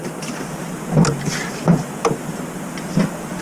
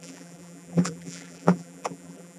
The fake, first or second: second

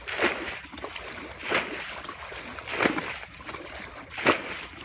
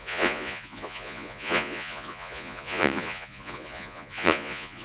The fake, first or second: second